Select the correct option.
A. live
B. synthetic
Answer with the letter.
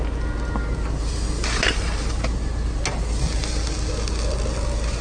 A